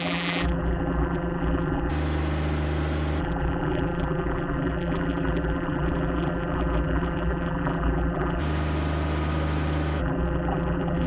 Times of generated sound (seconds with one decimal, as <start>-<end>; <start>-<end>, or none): 0.0-1.9; 3.2-8.4; 10.0-11.1